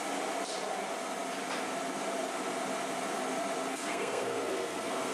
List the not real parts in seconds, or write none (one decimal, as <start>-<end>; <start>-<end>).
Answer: 3.7-5.1